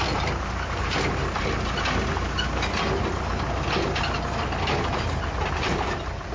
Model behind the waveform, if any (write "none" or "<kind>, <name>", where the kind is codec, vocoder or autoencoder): none